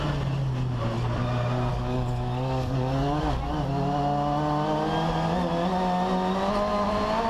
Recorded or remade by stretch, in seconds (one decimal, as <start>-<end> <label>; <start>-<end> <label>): 0.0-1.7 recorded; 1.7-3.2 remade; 3.2-7.3 recorded